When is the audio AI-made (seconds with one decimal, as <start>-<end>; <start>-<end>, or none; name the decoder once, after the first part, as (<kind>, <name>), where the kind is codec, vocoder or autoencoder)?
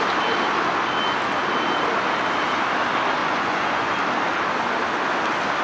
3.2-4.0 (vocoder, Vocos)